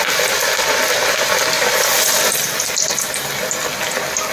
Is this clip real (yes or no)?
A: yes